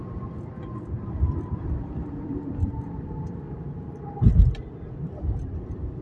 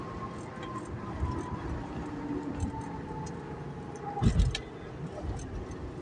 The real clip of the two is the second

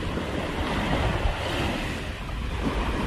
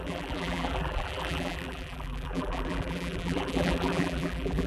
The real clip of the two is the first